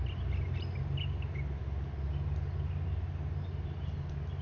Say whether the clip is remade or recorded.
recorded